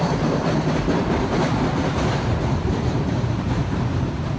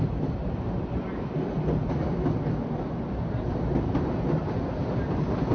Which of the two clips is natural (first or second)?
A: second